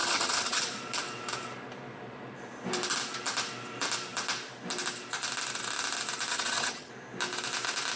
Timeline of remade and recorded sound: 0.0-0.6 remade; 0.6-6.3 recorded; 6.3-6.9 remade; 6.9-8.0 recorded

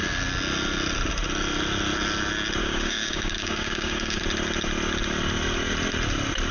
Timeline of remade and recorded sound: 0.0-2.6 recorded; 2.6-4.2 remade; 4.2-6.5 recorded